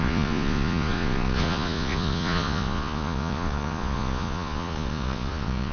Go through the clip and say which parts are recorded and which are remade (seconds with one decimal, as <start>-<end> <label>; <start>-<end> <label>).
0.0-5.7 remade